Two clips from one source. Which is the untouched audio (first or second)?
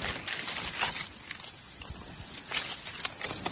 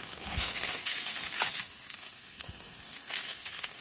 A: first